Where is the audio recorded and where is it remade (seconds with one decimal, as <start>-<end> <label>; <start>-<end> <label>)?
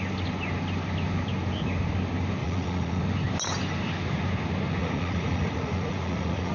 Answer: 0.0-2.4 recorded; 2.4-3.0 remade; 3.0-4.8 recorded; 4.8-6.5 remade